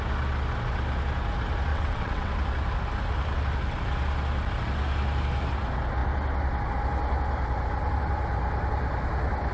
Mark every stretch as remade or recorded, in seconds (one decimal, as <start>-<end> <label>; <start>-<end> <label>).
0.0-1.7 recorded; 1.7-2.3 remade; 2.3-9.5 recorded